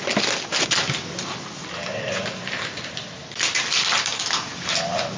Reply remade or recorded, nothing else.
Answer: recorded